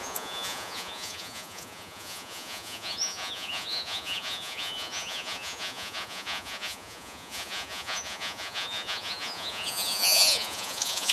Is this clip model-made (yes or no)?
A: yes